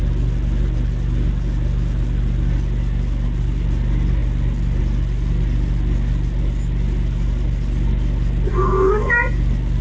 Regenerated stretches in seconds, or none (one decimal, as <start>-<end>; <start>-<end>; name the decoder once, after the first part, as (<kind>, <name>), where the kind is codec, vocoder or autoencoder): 8.5-9.1 (codec, SNAC)